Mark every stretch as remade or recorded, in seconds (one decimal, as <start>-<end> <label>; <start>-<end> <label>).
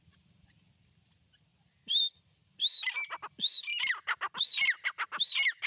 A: 0.0-5.7 recorded